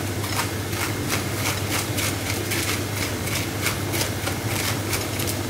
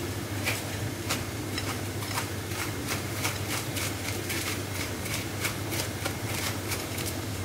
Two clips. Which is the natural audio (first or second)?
first